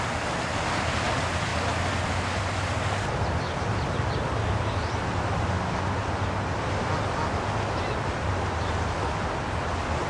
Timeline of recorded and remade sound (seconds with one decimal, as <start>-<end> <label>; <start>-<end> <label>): 0.0-10.1 recorded